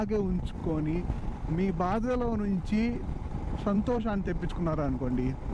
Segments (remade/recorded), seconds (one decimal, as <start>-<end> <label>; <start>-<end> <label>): 0.0-2.5 recorded; 2.5-4.5 remade; 4.5-5.5 recorded